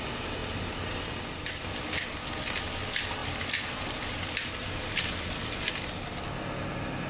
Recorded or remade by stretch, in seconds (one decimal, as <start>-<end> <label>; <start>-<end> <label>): 0.0-0.4 recorded; 0.4-1.6 remade; 1.6-3.2 recorded; 3.2-5.7 remade; 5.7-7.1 recorded